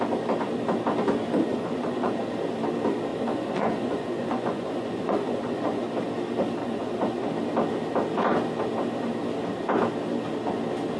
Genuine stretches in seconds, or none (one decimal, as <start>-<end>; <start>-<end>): 0.0-1.5; 2.2-3.1; 5.8-6.6; 7.3-11.0